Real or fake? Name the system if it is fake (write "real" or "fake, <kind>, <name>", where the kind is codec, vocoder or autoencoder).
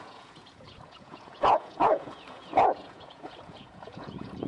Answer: fake, vocoder, Vocos